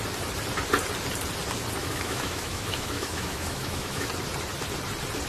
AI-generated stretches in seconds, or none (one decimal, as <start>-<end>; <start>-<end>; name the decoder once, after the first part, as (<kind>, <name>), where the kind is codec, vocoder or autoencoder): 1.8-4.1 (autoencoder, DAC-VAE)